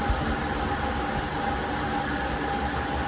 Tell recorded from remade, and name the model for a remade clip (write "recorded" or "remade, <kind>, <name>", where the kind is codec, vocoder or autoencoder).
recorded